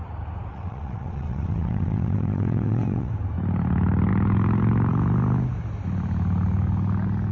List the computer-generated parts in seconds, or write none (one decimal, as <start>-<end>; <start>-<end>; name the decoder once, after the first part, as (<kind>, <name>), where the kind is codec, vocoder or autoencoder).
0.5-3.1 (vocoder, WaveNeXt)